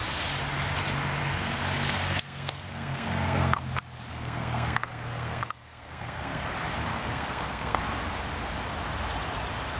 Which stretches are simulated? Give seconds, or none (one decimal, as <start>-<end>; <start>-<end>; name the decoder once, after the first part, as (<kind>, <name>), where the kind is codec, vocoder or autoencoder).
1.2-3.6 (codec, SNAC); 4.1-6.4; 6.9-7.8